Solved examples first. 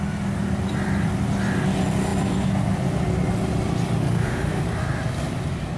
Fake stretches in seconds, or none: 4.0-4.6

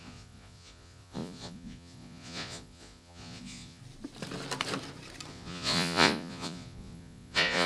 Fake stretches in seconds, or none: 0.0-3.8; 5.3-7.7